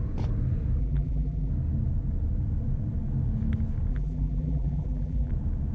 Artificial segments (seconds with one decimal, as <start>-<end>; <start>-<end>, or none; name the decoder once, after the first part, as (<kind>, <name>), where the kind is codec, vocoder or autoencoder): 0.8-1.5 (vocoder, BigVGAN v2); 3.9-5.3